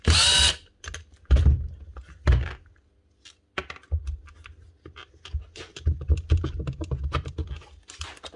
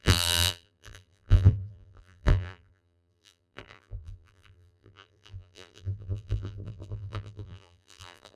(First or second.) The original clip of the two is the first